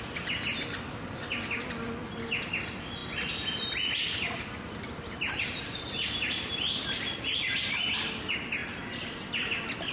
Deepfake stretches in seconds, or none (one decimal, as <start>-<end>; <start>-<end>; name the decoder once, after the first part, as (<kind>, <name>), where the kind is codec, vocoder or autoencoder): none